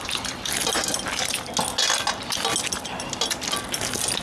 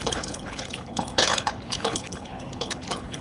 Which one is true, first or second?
first